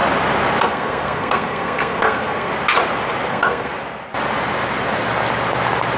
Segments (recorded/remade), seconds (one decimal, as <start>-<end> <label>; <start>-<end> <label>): 0.0-0.6 recorded; 0.6-2.5 remade; 2.5-3.3 recorded; 3.3-3.7 remade; 3.7-6.0 recorded